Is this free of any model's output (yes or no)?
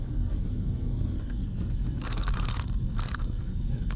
no